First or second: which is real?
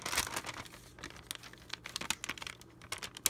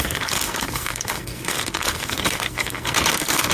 first